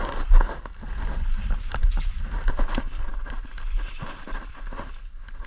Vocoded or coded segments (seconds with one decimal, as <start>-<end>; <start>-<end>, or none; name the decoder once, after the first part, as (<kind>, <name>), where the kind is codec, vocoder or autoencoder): none